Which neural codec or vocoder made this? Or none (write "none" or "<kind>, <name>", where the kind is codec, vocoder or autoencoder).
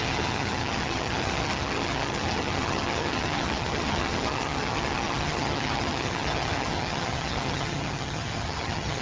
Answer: vocoder, HiFi-GAN